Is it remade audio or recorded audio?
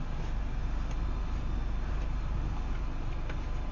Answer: recorded